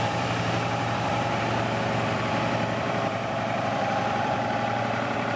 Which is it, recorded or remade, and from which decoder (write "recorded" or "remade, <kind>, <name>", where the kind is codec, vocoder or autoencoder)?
remade, vocoder, BigVGAN v2